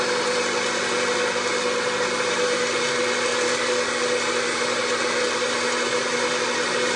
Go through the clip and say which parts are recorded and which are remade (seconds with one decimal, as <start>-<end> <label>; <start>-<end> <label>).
0.0-7.0 recorded